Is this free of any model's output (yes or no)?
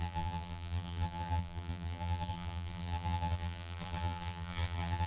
no